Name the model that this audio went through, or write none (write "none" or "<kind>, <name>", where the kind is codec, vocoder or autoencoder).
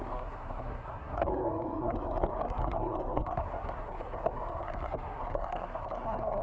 codec, SNAC